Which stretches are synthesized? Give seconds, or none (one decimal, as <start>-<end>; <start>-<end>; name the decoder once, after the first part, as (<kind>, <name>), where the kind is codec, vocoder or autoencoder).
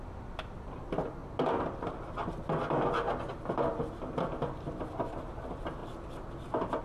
none